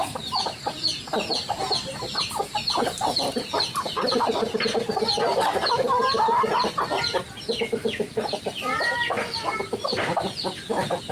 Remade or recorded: recorded